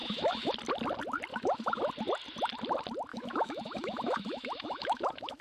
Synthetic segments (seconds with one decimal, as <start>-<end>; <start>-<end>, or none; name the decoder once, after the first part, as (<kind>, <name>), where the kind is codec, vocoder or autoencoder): 0.0-0.5 (autoencoder, DAC-VAE); 1.3-1.8; 3.1-5.4